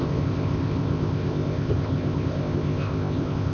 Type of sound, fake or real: fake